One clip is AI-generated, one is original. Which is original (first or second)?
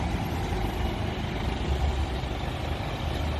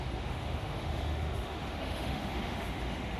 first